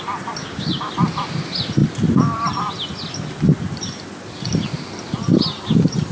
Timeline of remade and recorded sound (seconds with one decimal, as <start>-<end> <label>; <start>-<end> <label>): 0.0-0.4 recorded; 0.4-0.9 remade; 0.9-6.1 recorded